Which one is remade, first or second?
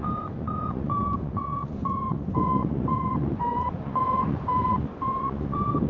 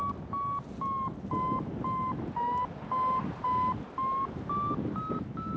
first